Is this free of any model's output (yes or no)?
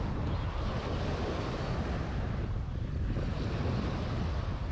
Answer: yes